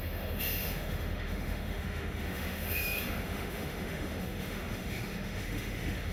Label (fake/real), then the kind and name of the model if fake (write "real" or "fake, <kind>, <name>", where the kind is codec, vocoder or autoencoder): fake, autoencoder, DAC-VAE